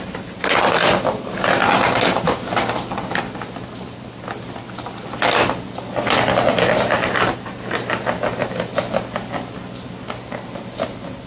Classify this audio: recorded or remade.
recorded